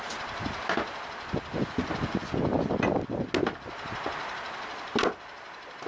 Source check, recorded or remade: recorded